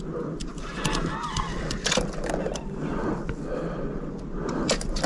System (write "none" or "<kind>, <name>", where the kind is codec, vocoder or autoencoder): none